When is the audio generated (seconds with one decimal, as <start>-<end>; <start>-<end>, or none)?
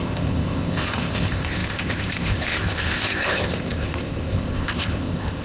0.0-5.4